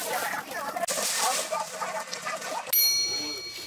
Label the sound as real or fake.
real